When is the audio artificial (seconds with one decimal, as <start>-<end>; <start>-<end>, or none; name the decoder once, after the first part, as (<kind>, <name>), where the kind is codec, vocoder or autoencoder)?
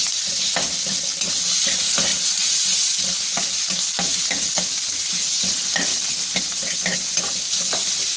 none